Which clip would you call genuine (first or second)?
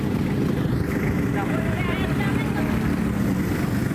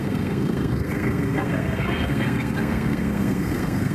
first